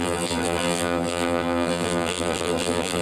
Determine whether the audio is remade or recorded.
remade